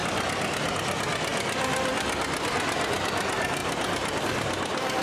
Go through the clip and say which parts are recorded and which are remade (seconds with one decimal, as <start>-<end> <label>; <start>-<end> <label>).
0.0-3.6 remade; 3.6-4.2 recorded; 4.2-5.0 remade